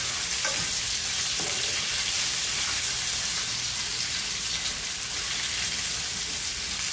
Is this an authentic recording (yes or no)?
yes